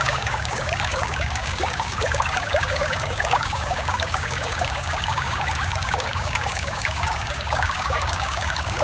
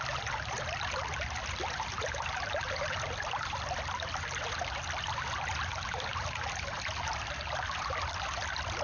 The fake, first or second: first